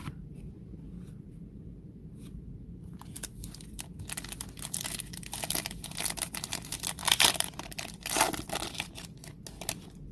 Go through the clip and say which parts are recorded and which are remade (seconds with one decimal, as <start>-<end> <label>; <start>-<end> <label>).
0.0-2.4 remade; 2.4-7.0 recorded; 7.0-7.9 remade; 7.9-10.1 recorded